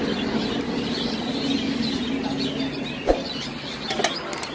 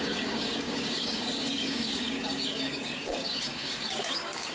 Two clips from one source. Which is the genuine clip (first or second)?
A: first